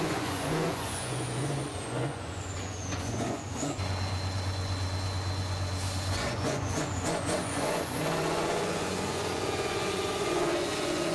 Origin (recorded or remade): remade